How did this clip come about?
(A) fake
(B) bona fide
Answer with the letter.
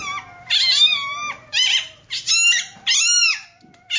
B